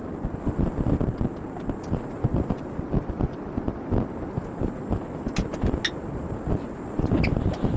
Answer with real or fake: real